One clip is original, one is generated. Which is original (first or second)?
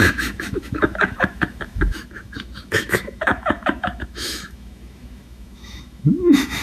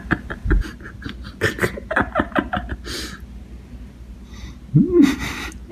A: second